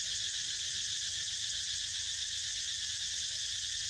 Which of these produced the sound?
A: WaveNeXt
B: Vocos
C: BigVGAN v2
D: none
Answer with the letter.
D